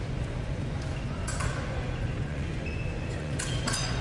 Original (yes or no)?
no